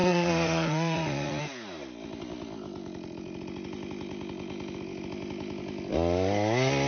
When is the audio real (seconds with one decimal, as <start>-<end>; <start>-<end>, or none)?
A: 1.4-6.9